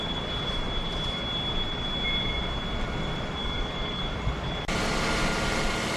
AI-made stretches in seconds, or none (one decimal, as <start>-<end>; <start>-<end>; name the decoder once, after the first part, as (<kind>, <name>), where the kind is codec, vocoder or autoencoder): 3.4-4.0 (codec, DAC)